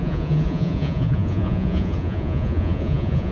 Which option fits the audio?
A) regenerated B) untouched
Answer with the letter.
A